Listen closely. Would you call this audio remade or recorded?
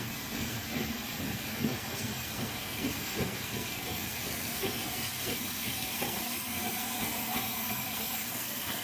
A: remade